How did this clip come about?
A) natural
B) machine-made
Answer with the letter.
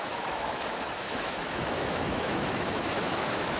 B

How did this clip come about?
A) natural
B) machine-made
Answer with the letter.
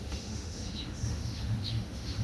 B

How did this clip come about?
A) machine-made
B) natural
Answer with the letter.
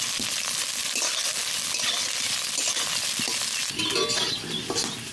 B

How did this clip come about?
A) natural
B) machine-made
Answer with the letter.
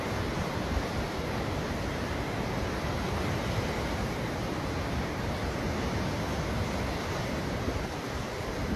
A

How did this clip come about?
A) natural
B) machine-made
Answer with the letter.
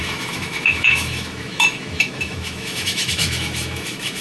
B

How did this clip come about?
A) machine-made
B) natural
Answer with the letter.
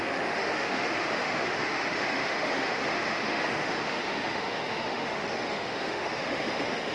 A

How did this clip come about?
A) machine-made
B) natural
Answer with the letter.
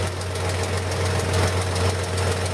B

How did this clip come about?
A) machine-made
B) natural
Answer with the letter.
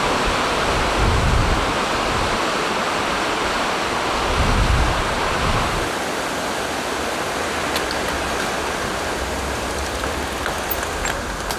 B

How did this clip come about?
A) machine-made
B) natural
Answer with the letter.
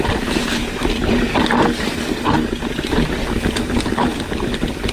B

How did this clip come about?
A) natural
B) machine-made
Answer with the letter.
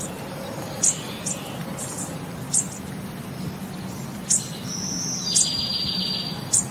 A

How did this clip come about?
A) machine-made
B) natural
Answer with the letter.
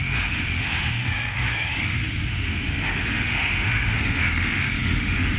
A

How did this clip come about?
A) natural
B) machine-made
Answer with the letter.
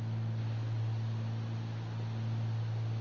A